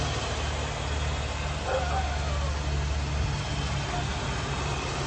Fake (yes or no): no